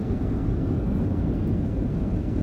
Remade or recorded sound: remade